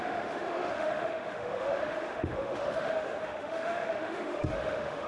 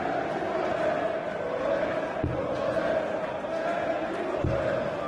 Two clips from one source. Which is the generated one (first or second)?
first